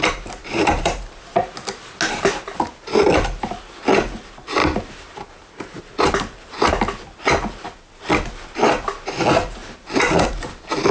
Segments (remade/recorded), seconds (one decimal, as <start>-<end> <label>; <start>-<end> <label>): 0.0-0.4 recorded; 0.4-1.2 remade; 1.2-4.6 recorded; 4.6-5.8 remade; 5.8-9.6 recorded; 9.6-10.5 remade; 10.5-10.9 recorded